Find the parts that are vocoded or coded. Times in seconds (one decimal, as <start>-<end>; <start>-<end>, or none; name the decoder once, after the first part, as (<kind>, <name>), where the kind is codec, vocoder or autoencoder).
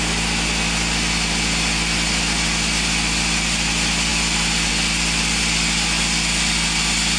none